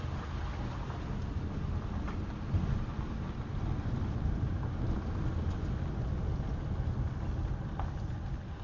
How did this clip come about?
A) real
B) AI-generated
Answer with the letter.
A